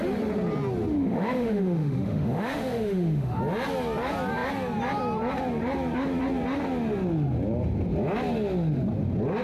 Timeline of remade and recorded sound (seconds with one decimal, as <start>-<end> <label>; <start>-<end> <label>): 0.0-0.9 recorded; 0.9-3.4 remade; 3.4-9.4 recorded